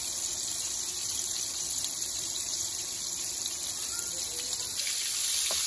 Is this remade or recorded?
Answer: remade